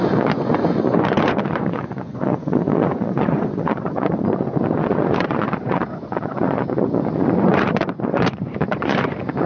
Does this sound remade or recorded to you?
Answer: remade